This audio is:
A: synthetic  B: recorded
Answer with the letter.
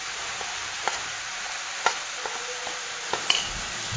B